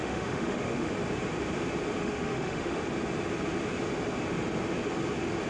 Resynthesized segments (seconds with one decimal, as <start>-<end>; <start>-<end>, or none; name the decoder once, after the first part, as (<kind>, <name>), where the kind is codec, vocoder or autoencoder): 0.0-0.9 (autoencoder, DAC-VAE); 2.0-2.8